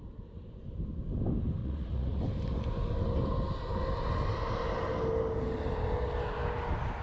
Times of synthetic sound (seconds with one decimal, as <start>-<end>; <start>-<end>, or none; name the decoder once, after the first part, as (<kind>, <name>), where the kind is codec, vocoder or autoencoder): 1.6-2.2 (vocoder, Vocos)